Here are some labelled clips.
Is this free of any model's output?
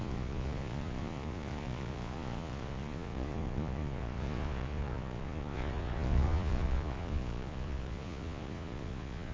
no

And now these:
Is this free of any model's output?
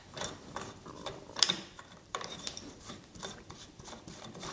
no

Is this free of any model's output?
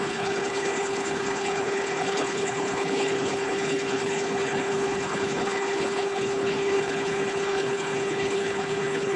no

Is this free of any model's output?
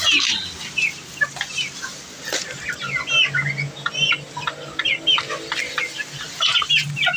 yes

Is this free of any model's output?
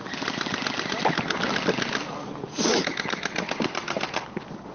yes